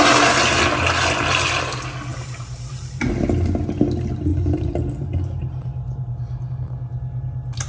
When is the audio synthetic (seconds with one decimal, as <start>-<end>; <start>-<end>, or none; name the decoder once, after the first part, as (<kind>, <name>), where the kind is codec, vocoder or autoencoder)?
2.1-3.1 (vocoder, BigVGAN v2); 4.3-6.5